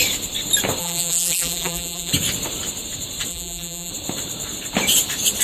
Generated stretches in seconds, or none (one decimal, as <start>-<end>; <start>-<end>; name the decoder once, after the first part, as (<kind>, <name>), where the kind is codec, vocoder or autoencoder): 0.8-2.1 (vocoder, BigVGAN v2); 3.3-3.9